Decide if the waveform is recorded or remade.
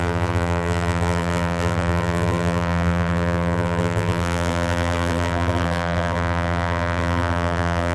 remade